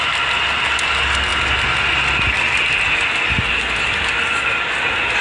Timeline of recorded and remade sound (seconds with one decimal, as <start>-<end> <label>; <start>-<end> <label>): 0.0-5.2 recorded